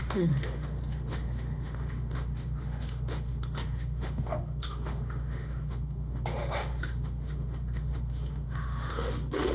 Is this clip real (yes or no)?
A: no